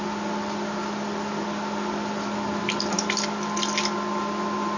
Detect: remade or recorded recorded